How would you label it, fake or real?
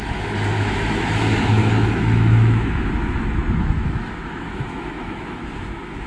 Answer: fake